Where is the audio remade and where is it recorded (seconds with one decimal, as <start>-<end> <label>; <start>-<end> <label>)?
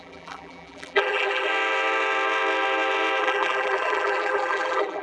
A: 0.0-1.5 remade; 1.5-3.2 recorded; 3.2-5.0 remade